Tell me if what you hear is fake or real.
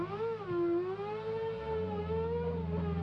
real